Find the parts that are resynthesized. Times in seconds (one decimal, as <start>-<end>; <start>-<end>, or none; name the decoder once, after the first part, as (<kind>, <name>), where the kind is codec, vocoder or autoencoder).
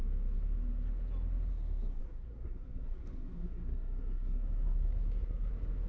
2.0-5.5 (codec, SNAC)